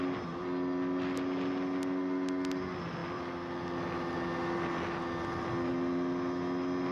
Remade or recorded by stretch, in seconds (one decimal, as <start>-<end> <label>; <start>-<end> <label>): 0.0-6.9 recorded